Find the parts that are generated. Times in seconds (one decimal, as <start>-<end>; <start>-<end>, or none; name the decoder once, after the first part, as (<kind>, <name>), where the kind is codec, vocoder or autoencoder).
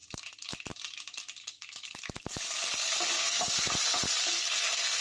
1.4-2.0 (codec, SNAC); 3.2-3.7; 4.2-5.0